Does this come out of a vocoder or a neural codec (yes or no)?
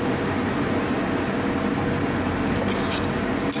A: no